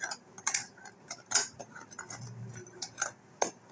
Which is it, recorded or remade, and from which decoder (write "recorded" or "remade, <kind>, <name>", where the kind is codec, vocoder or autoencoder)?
recorded